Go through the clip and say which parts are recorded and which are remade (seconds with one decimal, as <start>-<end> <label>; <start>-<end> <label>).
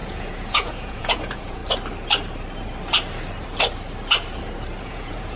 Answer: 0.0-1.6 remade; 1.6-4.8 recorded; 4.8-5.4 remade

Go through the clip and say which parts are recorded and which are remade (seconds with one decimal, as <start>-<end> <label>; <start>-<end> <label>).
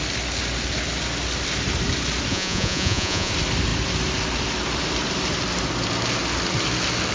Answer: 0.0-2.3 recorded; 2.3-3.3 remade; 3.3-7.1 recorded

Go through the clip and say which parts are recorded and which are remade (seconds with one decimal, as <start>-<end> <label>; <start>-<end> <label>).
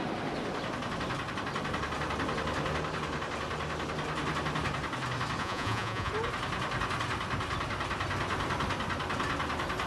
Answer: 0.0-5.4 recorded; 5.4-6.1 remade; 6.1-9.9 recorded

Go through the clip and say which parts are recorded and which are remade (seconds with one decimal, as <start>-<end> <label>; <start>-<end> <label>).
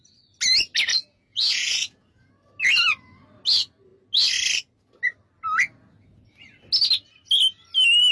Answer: 0.0-0.9 recorded; 0.9-2.3 remade; 2.3-8.1 recorded